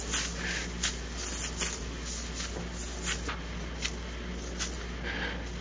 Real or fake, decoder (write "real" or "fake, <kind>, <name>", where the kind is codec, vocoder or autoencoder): real